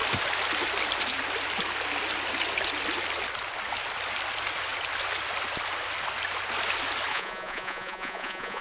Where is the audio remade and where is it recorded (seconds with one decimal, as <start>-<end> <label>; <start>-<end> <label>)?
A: 0.0-7.1 recorded; 7.1-8.6 remade